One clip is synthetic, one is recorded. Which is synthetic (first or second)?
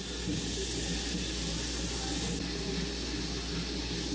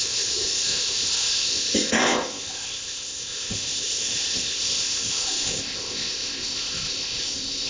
second